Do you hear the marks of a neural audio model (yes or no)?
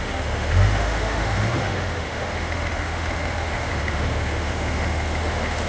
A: yes